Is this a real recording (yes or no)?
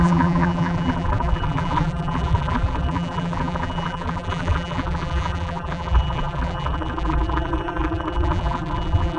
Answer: no